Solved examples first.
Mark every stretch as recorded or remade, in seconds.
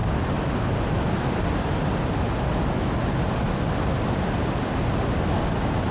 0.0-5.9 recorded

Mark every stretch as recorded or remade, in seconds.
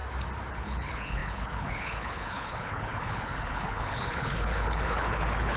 0.0-0.5 recorded; 0.5-5.6 remade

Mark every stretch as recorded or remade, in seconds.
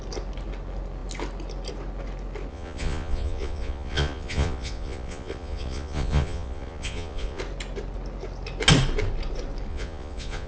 0.0-2.5 recorded; 2.5-7.4 remade; 7.4-9.7 recorded; 9.7-10.5 remade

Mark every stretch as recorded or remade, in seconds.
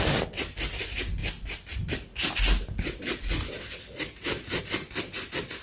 0.0-5.6 recorded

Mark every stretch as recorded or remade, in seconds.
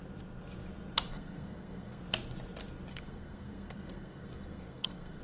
0.0-1.1 recorded; 1.1-2.0 remade; 2.0-2.9 recorded; 2.9-5.2 remade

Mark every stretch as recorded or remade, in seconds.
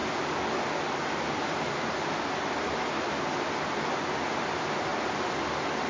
0.0-5.9 recorded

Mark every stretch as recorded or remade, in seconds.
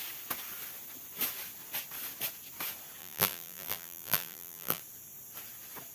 0.0-3.0 recorded; 3.0-4.8 remade; 4.8-5.9 recorded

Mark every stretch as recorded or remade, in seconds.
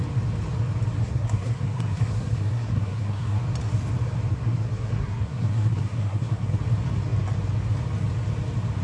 0.0-1.0 recorded; 1.0-3.4 remade; 3.4-4.3 recorded; 4.3-6.6 remade; 6.6-8.8 recorded